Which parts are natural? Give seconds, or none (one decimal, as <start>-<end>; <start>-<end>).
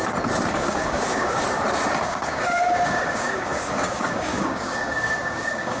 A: 0.0-0.5; 1.4-2.0